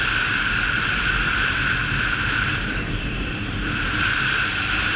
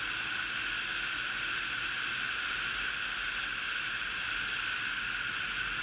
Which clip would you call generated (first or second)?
first